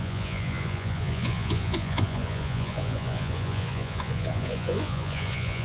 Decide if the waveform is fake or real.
fake